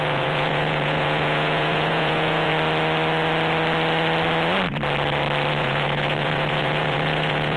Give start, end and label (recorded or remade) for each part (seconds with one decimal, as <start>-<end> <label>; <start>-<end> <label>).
0.0-2.5 remade; 2.5-5.5 recorded; 5.5-7.6 remade